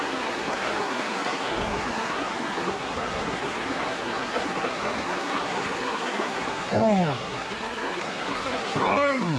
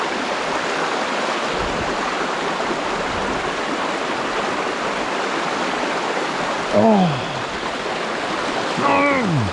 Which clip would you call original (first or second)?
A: second